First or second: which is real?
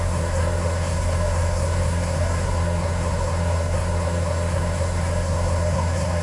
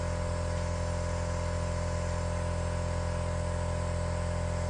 second